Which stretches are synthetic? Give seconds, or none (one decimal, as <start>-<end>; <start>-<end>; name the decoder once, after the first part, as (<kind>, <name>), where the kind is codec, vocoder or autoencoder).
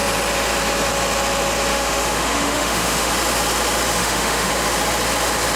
1.7-3.1 (autoencoder, DAC-VAE); 4.0-4.5